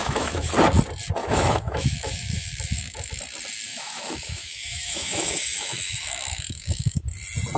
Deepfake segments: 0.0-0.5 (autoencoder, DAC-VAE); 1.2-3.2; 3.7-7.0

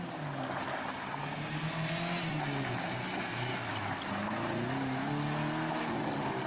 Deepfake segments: none